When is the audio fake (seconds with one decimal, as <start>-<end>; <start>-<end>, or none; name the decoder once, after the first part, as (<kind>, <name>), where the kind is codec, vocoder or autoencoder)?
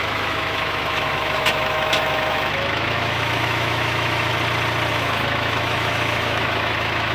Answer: 0.0-4.3 (autoencoder, DAC-VAE); 4.9-7.1